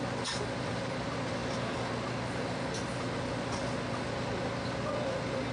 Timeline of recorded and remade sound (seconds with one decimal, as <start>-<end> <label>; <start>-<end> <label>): 0.0-5.5 recorded

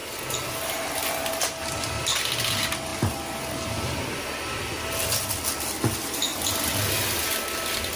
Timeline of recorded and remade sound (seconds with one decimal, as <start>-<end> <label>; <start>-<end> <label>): 0.0-8.0 recorded

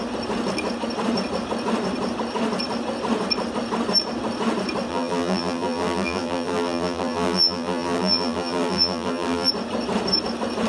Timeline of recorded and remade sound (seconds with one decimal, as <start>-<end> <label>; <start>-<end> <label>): 0.0-4.9 recorded; 4.9-9.5 remade; 9.5-10.7 recorded